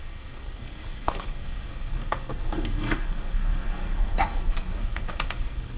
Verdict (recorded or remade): remade